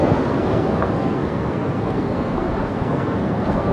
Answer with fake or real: fake